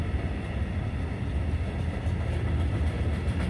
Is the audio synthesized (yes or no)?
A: no